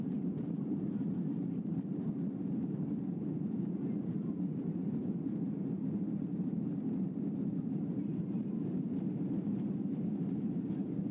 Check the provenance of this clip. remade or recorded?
remade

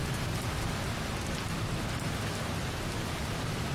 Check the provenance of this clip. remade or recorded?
recorded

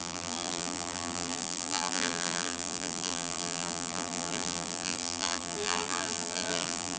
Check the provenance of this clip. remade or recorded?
remade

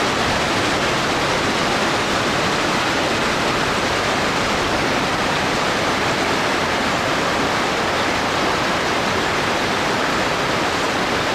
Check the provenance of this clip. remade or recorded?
remade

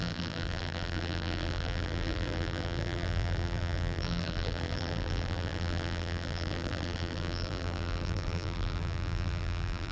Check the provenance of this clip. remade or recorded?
remade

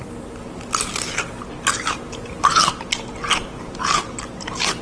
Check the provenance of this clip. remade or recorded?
recorded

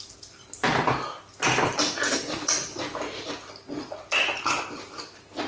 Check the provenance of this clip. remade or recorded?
recorded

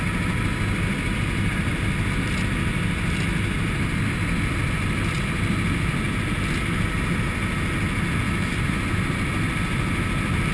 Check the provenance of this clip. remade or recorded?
recorded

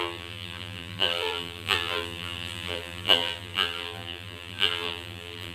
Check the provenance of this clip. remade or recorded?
remade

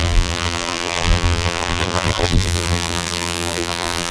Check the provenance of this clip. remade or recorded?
remade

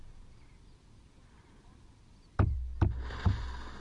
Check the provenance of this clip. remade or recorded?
remade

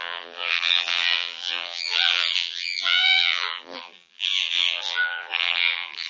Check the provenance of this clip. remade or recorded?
remade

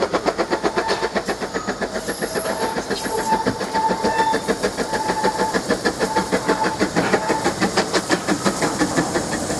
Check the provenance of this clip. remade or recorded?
remade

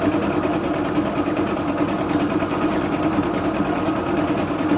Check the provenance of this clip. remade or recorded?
recorded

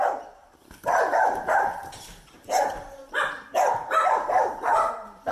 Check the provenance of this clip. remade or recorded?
remade